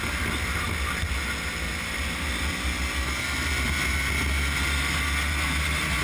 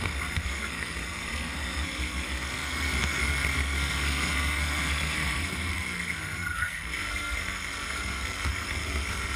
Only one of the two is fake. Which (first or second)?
second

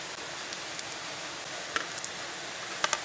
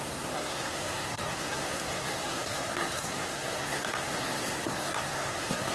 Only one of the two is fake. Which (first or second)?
second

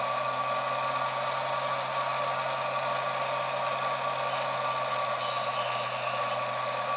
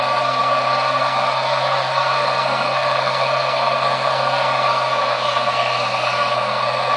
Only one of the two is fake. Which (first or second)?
second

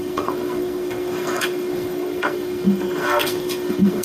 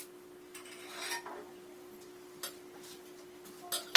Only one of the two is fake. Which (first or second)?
first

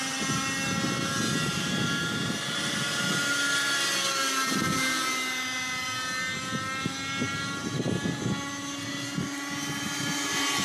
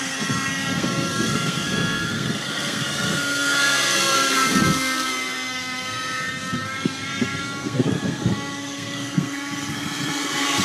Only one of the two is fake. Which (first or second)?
second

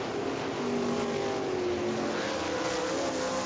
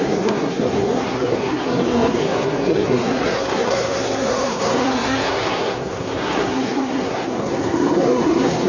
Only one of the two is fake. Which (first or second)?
second